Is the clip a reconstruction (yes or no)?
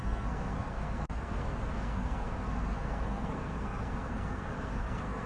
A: yes